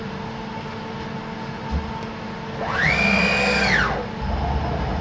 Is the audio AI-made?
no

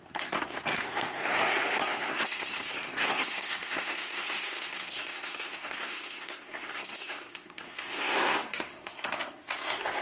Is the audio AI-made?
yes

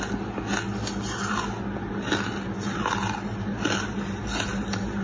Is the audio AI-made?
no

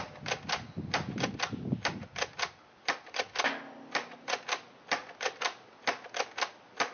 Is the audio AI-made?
no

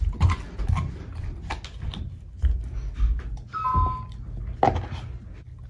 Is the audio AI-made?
no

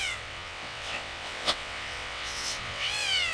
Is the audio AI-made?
yes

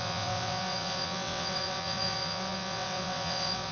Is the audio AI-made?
yes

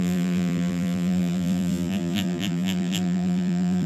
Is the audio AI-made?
yes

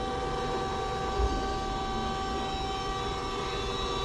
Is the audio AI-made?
no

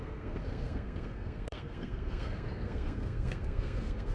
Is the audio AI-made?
yes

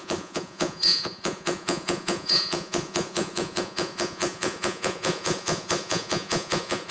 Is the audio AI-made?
yes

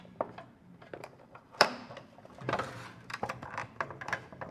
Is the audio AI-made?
yes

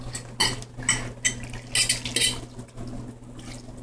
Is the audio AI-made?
no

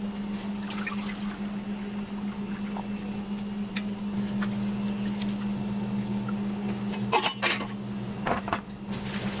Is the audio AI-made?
no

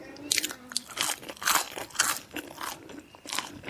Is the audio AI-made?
yes